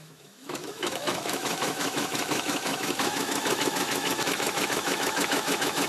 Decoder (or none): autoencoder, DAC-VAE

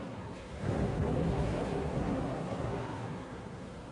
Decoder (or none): codec, SNAC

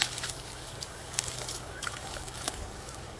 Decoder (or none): codec, DAC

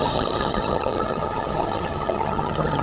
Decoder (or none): vocoder, HiFi-GAN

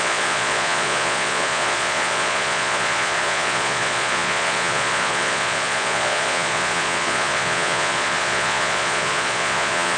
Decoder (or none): vocoder, Vocos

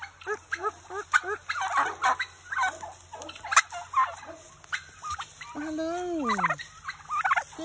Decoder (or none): none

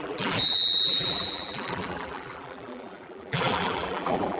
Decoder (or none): vocoder, BigVGAN v2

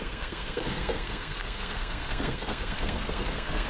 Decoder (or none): codec, SNAC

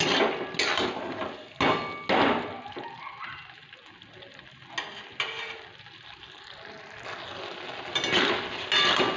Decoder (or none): none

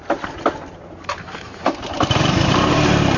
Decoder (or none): vocoder, BigVGAN v2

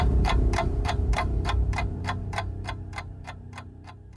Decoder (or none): vocoder, BigVGAN v2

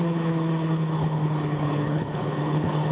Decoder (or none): codec, HILCodec